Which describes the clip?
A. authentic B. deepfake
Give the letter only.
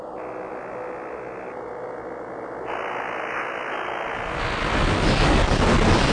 A